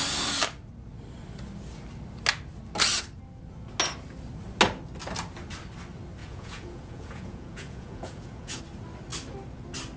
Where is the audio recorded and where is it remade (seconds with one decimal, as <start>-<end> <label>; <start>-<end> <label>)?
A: 0.0-6.2 recorded; 6.2-8.6 remade; 8.6-10.0 recorded